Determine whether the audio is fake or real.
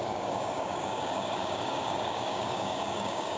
fake